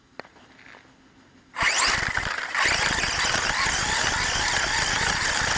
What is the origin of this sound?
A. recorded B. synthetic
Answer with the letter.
A